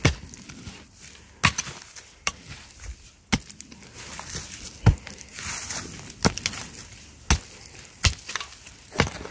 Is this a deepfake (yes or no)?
no